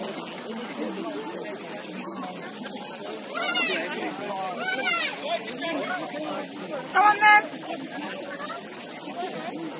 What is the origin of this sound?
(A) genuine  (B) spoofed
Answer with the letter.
A